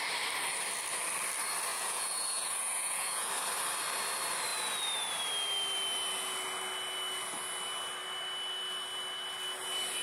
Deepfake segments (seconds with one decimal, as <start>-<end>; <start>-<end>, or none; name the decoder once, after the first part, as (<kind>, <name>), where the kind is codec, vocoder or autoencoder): 1.7-3.3 (vocoder, Vocos)